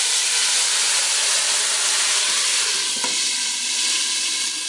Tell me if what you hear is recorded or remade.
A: recorded